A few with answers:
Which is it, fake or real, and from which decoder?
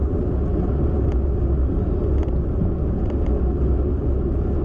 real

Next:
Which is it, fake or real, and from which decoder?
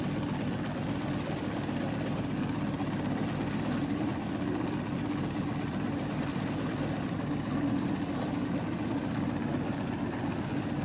real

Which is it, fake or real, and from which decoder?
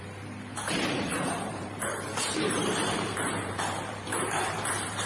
fake, vocoder, BigVGAN v2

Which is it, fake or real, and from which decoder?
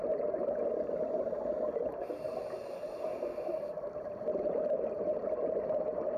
real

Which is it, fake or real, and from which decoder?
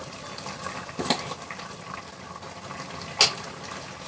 real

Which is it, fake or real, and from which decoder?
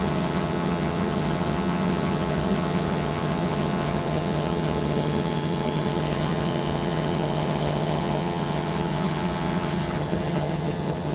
fake, vocoder, HiFi-GAN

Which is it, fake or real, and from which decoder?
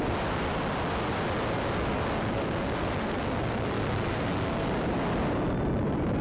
real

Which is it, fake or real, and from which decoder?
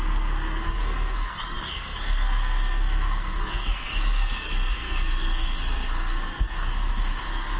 fake, codec, SNAC